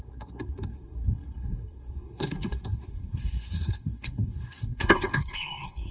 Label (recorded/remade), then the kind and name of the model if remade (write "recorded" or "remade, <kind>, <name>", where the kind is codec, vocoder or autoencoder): remade, codec, SNAC